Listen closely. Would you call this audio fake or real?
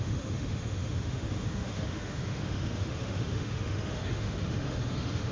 fake